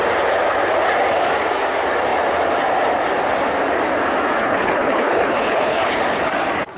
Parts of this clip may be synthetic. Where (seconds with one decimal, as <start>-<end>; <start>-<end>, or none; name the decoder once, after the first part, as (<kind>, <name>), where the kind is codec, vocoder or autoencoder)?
4.4-6.0 (codec, HILCodec)